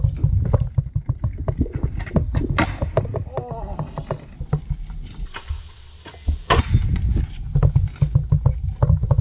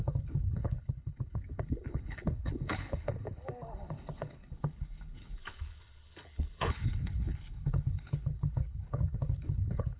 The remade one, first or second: second